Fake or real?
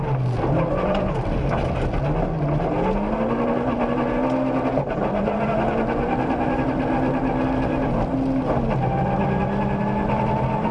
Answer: real